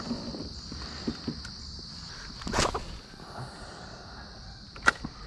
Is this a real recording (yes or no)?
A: yes